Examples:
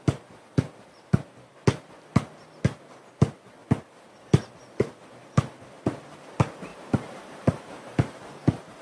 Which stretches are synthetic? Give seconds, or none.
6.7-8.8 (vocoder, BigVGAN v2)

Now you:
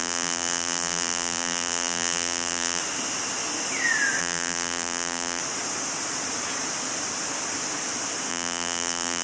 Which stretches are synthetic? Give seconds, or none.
0.0-2.8 (vocoder, BigVGAN v2); 4.2-5.4; 8.3-9.2